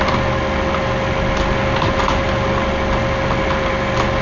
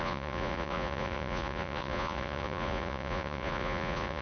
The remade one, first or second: second